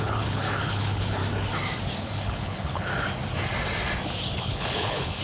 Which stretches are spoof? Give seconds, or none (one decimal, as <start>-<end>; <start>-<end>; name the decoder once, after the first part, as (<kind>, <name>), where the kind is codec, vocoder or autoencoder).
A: 0.0-1.2 (codec, HILCodec); 2.0-2.9; 4.4-5.2